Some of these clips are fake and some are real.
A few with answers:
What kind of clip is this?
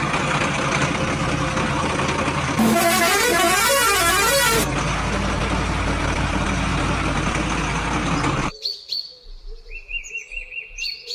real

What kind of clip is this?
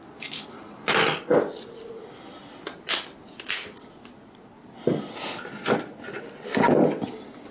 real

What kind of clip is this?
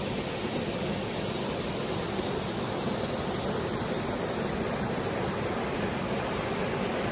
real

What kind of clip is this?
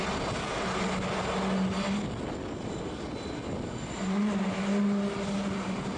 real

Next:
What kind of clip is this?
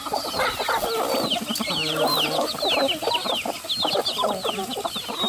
real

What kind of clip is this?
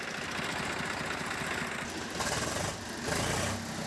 real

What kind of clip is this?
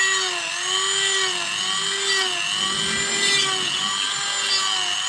real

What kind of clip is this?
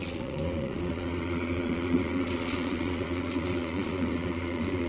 fake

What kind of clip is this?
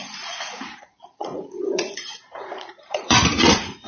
fake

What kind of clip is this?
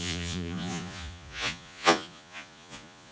fake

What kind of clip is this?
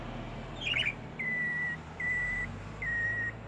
real